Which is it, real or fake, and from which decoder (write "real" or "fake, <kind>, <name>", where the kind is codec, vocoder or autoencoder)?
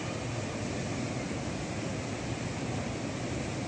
real